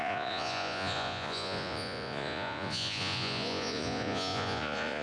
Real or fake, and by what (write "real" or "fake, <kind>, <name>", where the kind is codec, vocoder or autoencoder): fake, vocoder, Vocos